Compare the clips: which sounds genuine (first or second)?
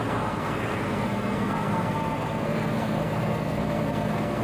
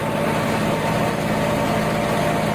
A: second